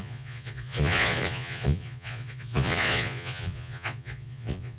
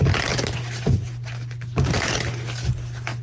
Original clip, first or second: second